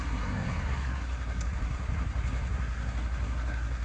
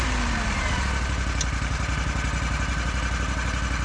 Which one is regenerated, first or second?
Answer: first